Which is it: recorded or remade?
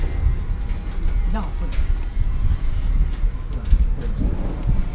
recorded